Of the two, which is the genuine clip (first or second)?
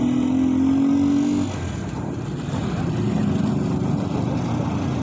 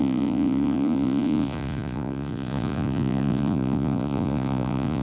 first